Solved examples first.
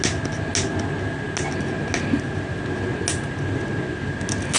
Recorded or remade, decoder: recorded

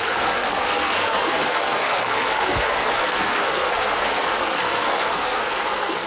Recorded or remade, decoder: remade, codec, SNAC